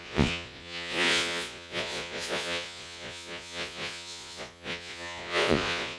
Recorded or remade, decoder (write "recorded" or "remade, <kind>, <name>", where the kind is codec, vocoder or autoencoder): remade, vocoder, Vocos